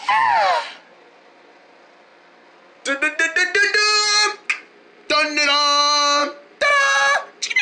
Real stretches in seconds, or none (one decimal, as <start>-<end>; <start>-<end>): 0.0-7.6